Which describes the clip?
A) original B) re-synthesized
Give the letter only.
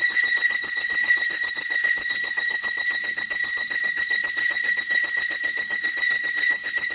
B